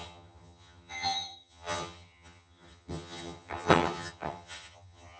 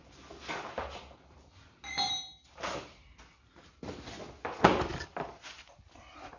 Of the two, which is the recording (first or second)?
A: second